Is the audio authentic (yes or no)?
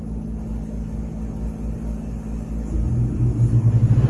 yes